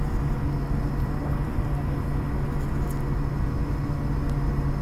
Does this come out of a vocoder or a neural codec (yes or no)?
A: no